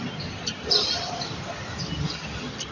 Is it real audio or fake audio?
real